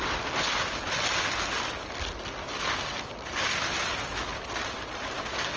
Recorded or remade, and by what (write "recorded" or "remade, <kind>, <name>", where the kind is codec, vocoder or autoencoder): recorded